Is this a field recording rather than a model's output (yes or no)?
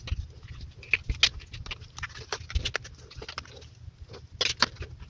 yes